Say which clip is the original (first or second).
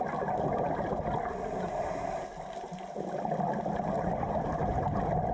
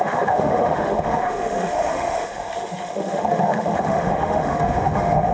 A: first